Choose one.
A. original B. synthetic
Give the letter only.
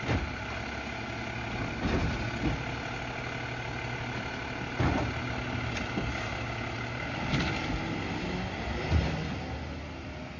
A